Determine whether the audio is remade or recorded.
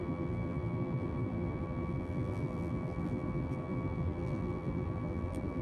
remade